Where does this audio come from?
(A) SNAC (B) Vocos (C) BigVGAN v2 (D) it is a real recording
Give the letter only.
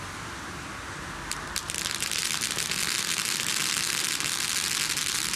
D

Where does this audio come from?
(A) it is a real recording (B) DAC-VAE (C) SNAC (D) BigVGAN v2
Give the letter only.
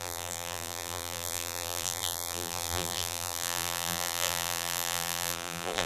D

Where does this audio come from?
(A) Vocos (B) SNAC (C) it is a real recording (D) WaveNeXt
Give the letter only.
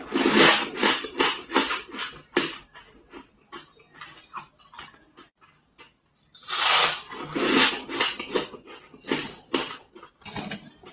C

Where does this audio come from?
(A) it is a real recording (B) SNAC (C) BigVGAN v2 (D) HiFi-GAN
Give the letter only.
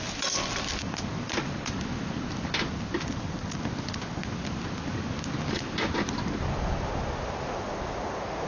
A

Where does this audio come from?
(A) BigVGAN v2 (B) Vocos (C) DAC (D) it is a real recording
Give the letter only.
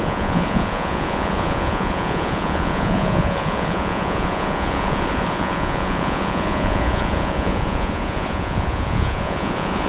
B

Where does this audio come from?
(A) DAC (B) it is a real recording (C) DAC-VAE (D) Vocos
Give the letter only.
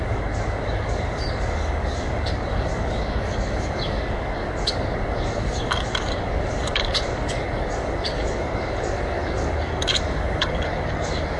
A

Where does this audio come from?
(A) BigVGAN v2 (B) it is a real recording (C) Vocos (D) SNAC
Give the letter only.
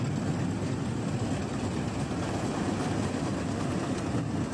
B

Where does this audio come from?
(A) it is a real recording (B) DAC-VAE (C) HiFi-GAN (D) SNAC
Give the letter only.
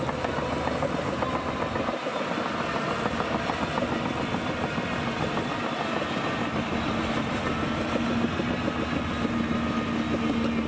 A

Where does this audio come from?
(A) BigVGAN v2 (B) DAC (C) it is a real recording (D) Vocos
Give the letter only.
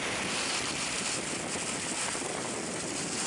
A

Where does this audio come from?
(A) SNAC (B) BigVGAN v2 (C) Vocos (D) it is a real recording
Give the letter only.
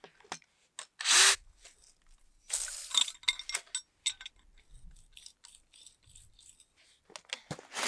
D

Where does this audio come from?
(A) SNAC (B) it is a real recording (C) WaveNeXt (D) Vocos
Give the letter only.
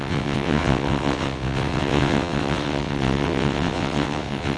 C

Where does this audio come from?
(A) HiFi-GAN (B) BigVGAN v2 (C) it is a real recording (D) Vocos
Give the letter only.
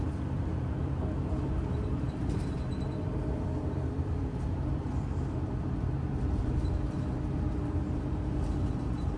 B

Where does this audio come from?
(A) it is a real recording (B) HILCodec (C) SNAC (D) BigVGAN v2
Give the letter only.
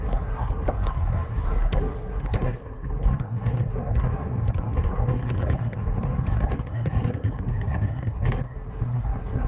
C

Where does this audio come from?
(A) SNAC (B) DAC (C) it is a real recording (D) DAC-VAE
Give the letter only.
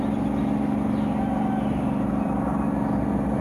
C